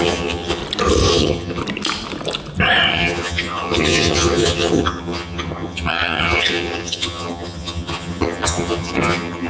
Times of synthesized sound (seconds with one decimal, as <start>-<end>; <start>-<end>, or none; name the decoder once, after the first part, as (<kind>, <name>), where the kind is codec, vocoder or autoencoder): 0.0-0.6 (vocoder, HiFi-GAN); 1.1-1.6; 2.9-9.5